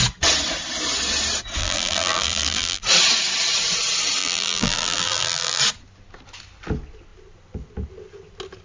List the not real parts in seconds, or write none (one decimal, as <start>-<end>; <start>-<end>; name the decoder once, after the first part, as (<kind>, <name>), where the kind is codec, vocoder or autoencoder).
1.6-2.8 (vocoder, BigVGAN v2); 4.2-5.6

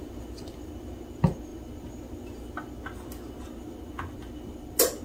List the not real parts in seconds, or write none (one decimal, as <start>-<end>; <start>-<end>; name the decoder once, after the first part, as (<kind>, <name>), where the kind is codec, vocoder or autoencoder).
none